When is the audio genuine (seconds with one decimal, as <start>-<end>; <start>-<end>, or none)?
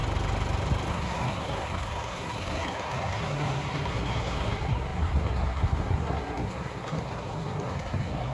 0.0-0.9